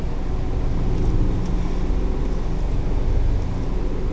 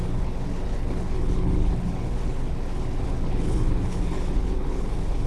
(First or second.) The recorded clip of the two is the first